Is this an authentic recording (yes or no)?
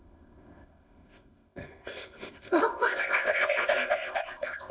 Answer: no